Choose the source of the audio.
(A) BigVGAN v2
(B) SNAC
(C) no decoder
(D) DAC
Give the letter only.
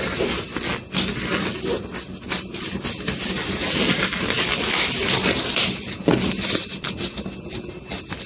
C